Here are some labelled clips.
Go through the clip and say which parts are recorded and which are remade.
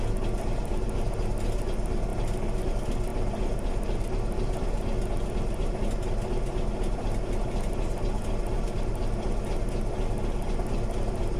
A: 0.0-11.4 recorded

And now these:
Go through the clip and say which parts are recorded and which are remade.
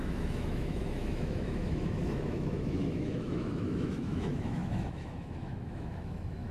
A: 0.0-6.5 remade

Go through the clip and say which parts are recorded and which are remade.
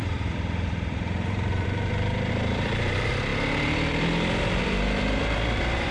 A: 0.0-3.3 remade; 3.3-4.6 recorded; 4.6-5.9 remade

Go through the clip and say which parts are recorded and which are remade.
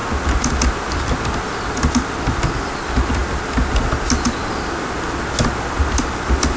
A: 0.0-6.6 recorded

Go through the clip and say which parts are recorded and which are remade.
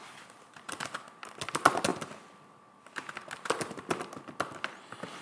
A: 0.0-5.2 recorded